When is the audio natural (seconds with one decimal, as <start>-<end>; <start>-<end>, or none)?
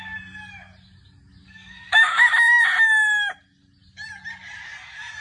0.0-1.4; 2.3-5.2